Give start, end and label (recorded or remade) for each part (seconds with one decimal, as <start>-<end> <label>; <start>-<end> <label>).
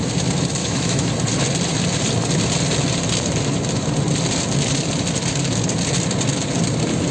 0.0-0.6 recorded; 0.6-1.1 remade; 1.1-7.1 recorded